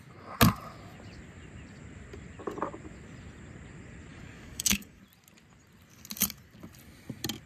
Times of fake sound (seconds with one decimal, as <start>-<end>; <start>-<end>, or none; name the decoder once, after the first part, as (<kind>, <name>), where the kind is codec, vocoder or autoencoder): 4.1-5.0 (codec, DAC)